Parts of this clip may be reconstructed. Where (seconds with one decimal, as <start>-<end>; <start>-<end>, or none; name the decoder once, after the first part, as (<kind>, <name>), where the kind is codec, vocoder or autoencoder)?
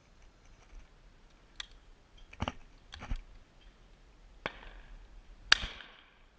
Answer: 0.0-0.6 (vocoder, BigVGAN v2)